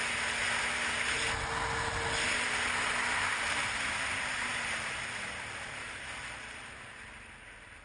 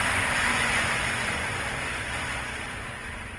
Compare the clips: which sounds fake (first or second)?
second